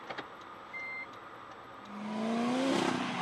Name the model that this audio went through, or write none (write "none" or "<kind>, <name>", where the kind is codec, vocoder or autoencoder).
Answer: none